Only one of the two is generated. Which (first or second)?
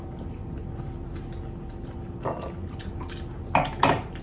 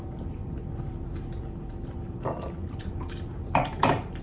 second